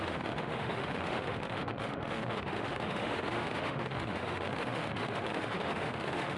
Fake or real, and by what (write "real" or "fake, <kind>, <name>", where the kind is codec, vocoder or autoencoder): fake, autoencoder, DAC-VAE